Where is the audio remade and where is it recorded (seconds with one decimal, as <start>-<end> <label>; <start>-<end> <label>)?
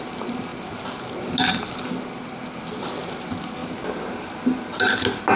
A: 0.0-5.4 recorded